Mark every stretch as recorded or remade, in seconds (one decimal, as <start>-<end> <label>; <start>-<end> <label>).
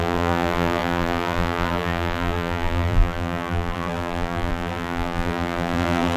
0.0-6.2 remade